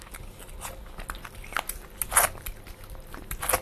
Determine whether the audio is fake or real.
real